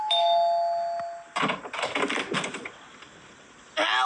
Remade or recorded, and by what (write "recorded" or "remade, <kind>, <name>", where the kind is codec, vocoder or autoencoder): recorded